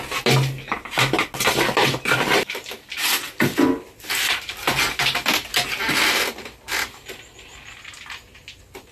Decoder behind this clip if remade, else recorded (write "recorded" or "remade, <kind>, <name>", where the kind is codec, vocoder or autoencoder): recorded